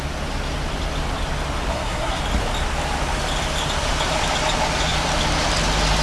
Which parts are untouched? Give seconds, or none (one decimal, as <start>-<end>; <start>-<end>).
0.0-1.7; 2.2-6.0